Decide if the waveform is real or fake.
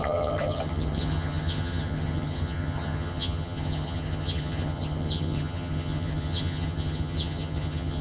fake